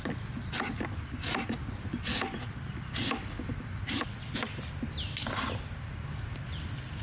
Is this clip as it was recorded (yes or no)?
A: yes